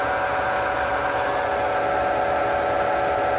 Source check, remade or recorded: recorded